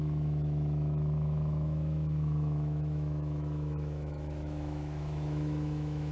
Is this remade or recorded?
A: remade